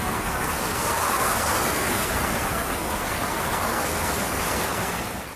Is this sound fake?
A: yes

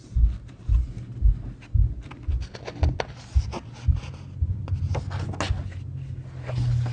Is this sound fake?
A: no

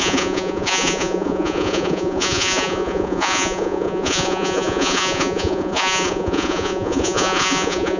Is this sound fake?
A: yes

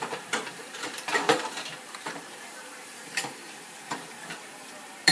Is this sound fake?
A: yes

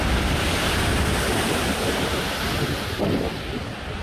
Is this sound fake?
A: no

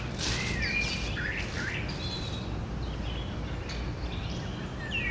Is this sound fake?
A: no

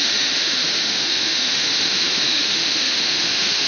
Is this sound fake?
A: yes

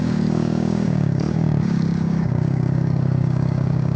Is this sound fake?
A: yes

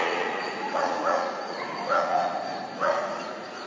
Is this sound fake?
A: yes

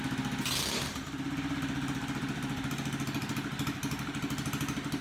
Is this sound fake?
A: no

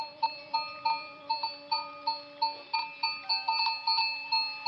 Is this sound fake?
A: no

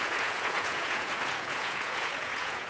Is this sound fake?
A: yes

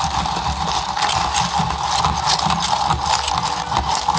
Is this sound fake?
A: no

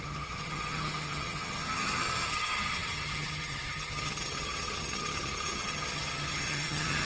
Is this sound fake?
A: yes